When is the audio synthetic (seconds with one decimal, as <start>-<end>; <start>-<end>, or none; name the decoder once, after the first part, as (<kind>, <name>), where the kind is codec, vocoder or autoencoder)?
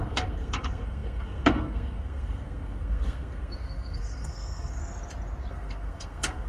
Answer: 0.0-4.8 (codec, SNAC); 5.5-6.5